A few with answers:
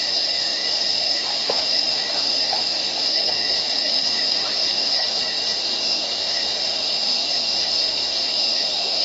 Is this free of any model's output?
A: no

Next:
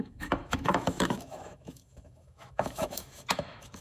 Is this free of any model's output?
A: no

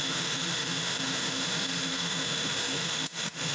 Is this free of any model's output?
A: no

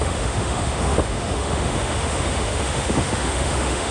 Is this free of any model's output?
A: no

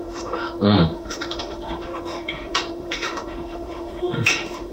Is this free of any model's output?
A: no